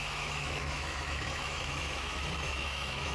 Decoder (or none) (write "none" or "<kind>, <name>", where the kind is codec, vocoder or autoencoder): autoencoder, DAC-VAE